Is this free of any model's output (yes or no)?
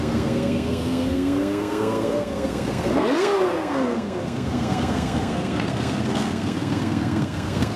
no